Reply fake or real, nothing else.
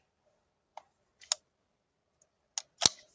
real